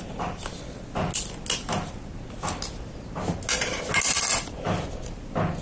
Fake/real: real